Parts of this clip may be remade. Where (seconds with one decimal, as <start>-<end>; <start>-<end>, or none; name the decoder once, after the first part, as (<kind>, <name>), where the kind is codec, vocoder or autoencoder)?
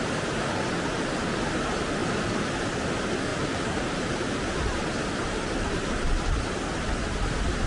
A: 3.3-6.1 (vocoder, BigVGAN v2)